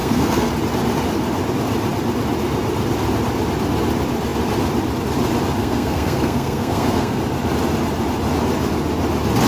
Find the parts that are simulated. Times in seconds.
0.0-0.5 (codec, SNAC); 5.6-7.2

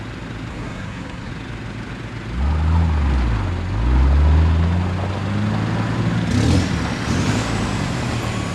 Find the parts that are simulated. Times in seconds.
0.5-1.3 (codec, SNAC)

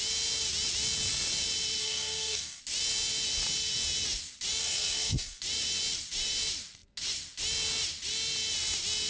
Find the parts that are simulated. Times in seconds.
1.8-2.6 (codec, SNAC); 4.6-5.4

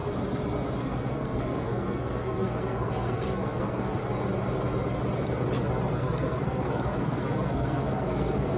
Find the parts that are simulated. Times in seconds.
0.8-4.0 (codec, SNAC); 5.9-8.6

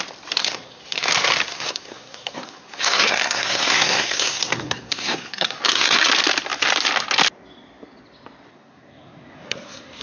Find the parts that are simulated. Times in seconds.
0.4-1.1 (codec, SNAC); 1.5-6.1; 8.5-10.0

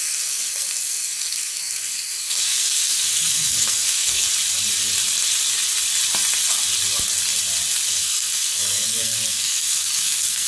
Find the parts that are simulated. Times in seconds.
0.0-4.2 (codec, SNAC); 7.9-10.5

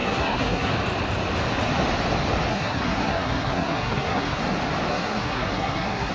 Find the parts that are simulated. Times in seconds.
0.0-0.7 (codec, SNAC); 2.5-4.4; 4.9-6.1